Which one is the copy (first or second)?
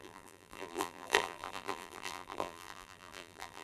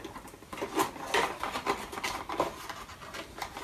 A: first